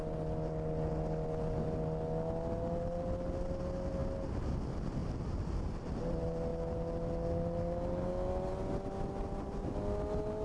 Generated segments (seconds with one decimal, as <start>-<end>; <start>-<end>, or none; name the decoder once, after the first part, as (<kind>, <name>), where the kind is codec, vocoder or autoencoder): none